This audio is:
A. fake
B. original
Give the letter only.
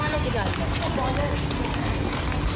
B